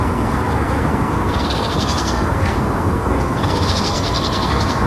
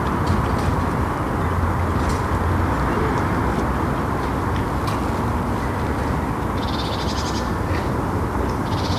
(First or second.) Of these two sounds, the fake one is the first